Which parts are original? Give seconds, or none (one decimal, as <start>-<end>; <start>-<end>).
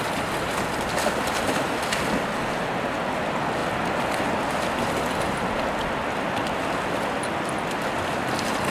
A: 0.0-8.7